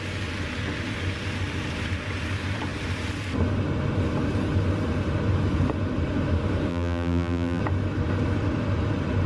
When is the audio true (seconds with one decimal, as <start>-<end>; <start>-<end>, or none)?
0.0-6.7; 7.6-9.3